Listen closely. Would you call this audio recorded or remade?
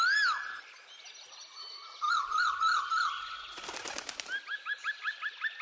recorded